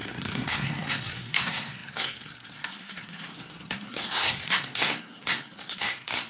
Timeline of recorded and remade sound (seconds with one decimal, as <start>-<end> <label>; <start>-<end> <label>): 0.0-6.3 remade

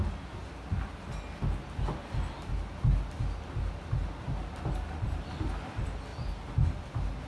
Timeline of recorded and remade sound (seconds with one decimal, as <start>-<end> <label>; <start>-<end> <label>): 0.0-7.3 recorded

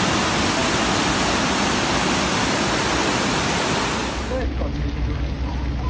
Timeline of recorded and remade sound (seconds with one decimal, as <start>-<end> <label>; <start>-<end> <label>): 0.0-5.9 recorded

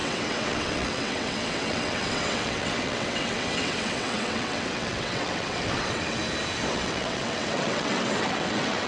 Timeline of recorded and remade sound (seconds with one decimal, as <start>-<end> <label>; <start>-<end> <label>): 0.0-6.2 remade; 6.2-6.7 recorded; 6.7-8.9 remade